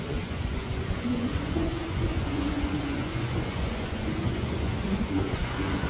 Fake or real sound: fake